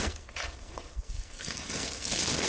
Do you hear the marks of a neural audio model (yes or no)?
yes